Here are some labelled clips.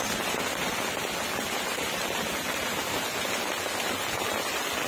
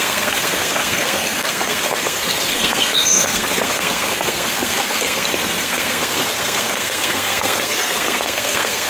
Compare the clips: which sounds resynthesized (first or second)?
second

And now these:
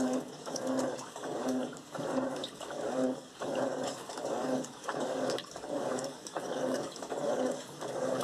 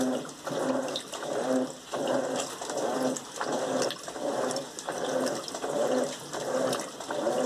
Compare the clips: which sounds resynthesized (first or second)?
first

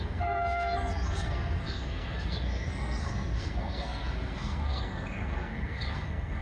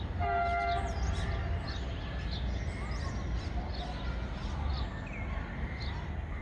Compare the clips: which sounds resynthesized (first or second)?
first